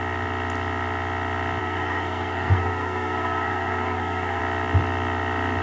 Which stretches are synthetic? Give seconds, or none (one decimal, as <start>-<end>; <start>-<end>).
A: 1.6-4.4